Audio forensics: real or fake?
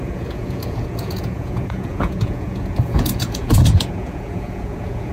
fake